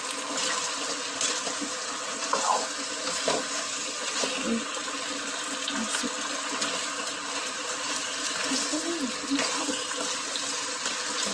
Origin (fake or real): real